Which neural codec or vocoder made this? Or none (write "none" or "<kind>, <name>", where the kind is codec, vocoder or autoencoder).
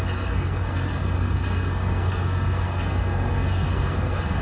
codec, SNAC